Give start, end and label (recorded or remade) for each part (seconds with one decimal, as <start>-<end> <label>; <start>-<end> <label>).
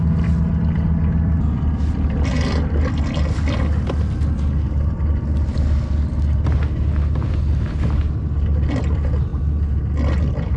0.0-10.6 recorded